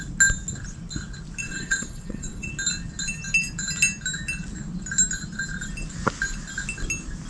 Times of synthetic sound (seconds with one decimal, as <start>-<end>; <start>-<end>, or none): 1.4-2.5